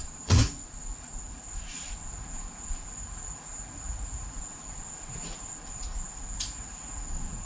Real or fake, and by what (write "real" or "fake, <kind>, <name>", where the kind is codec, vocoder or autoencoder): fake, vocoder, Vocos